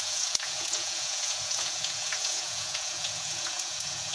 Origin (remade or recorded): remade